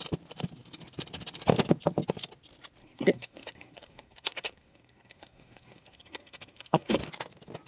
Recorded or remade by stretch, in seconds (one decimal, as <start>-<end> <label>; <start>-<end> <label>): 0.0-2.8 recorded; 2.8-7.0 remade; 7.0-7.7 recorded